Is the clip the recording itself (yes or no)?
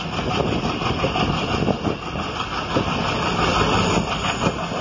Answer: yes